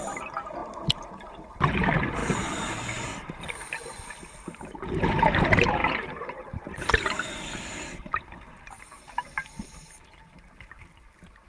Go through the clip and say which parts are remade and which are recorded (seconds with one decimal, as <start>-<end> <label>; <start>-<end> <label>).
0.0-0.6 recorded; 0.6-1.5 remade; 1.5-2.2 recorded; 2.2-3.6 remade; 3.6-5.8 recorded; 5.8-10.6 remade; 10.6-11.5 recorded